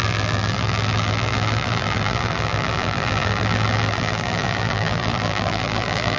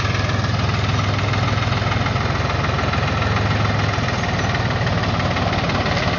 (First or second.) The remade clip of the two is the first